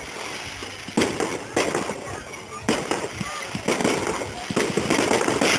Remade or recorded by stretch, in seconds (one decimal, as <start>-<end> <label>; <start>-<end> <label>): 0.0-5.6 recorded